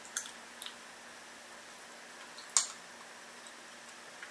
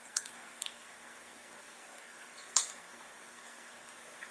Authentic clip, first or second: first